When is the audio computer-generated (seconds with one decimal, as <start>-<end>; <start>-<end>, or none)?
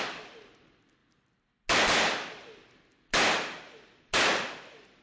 none